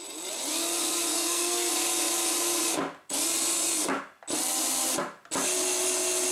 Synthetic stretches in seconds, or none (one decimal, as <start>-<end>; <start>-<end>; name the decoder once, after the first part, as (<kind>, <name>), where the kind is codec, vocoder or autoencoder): 1.1-1.7 (codec, SNAC)